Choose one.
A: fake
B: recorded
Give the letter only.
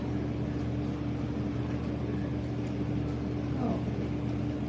B